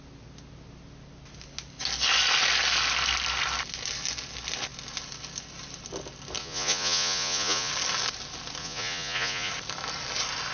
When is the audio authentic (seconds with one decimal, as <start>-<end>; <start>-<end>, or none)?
0.0-6.4; 7.7-8.6; 9.5-10.5